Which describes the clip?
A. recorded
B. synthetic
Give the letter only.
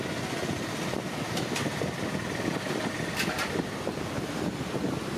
A